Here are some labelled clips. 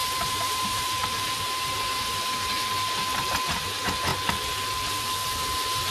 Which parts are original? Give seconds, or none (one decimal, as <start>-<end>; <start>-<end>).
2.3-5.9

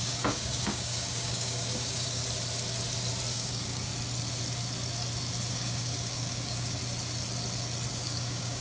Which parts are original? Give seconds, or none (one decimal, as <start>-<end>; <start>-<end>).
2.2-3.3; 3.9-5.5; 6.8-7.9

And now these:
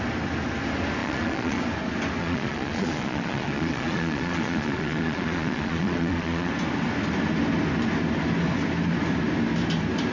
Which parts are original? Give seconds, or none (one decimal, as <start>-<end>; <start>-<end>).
0.0-1.0; 1.6-2.2; 6.5-10.1

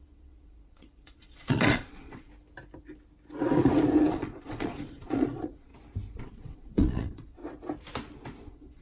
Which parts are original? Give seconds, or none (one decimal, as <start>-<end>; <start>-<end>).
2.3-4.0; 5.7-6.2; 7.4-8.4